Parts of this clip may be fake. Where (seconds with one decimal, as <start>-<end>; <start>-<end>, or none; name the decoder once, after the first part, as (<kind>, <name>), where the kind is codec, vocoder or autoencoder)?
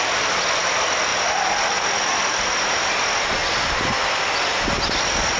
none